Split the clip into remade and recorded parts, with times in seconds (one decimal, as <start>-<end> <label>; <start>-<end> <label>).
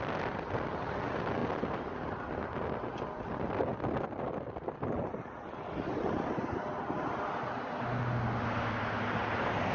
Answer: 0.0-9.7 recorded